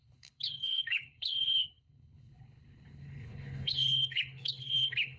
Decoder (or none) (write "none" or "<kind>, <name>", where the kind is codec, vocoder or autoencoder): codec, HILCodec